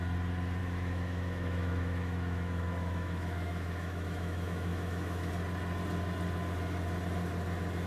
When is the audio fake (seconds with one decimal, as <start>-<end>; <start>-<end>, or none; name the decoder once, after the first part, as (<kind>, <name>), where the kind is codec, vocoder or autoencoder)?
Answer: 0.6-5.3 (autoencoder, DAC-VAE)